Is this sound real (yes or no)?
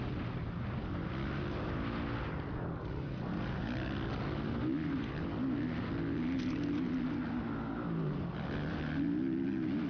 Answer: yes